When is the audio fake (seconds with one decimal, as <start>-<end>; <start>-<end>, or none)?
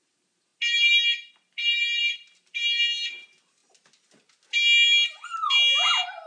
none